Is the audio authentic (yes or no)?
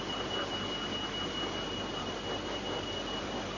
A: yes